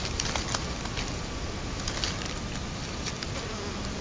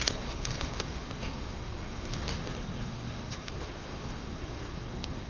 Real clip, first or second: first